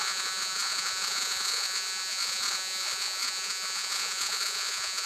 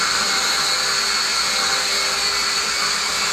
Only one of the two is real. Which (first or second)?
second